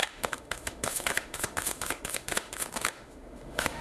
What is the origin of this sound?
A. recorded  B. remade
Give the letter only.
B